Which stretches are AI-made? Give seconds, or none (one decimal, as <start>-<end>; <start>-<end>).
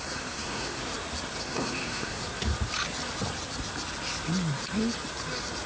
0.0-0.8; 1.4-2.2